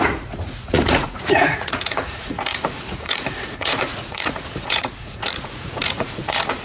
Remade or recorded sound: remade